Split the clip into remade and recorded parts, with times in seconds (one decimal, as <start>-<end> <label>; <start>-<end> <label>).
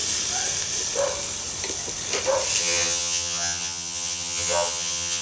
0.0-2.6 recorded; 2.6-5.2 remade